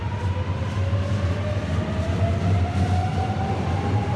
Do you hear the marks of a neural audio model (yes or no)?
no